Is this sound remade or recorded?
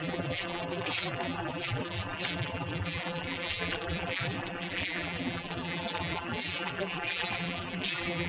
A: remade